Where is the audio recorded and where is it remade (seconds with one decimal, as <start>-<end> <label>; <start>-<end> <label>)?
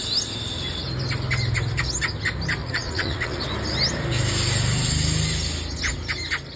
0.0-2.6 recorded; 2.6-3.4 remade; 3.4-6.6 recorded